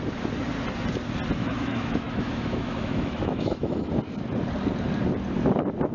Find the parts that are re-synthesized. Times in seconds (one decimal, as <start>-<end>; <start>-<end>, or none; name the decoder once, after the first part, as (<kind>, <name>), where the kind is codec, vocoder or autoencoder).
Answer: 1.4-3.9 (autoencoder, DAC-VAE)